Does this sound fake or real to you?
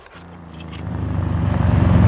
fake